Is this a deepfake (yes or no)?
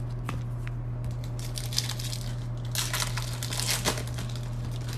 no